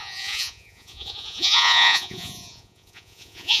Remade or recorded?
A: remade